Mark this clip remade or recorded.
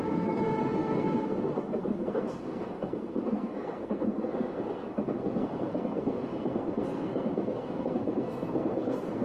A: remade